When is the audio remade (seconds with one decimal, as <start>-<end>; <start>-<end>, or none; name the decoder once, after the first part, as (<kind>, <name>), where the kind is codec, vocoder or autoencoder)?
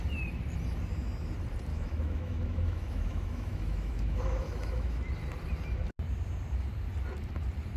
1.7-5.0 (autoencoder, DAC-VAE)